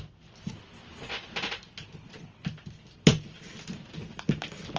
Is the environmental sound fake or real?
real